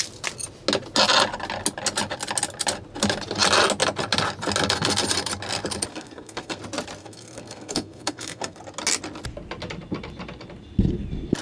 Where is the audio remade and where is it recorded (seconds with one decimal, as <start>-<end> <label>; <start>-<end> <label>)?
0.0-5.9 recorded; 5.9-6.6 remade; 6.6-7.0 recorded; 7.0-8.6 remade; 8.6-11.4 recorded